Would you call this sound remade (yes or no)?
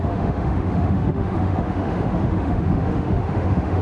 yes